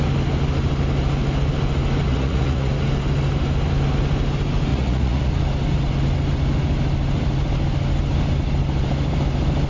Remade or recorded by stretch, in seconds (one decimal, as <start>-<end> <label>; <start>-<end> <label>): 0.0-2.1 recorded; 2.1-2.7 remade; 2.7-4.7 recorded; 4.7-5.3 remade; 5.3-9.7 recorded